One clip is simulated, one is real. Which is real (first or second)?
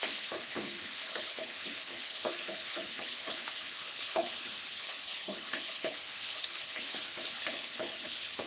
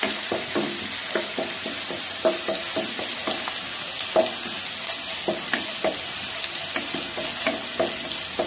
second